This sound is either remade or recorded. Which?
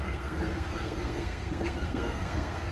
remade